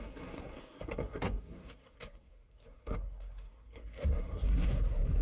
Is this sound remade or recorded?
remade